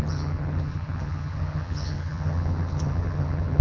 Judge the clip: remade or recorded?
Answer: remade